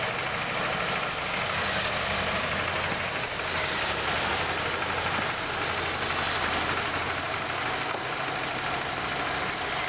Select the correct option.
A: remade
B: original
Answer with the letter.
B